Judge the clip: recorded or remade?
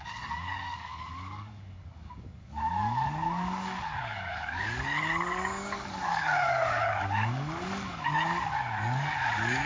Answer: remade